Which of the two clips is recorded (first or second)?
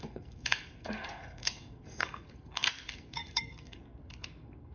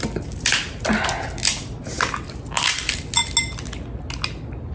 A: second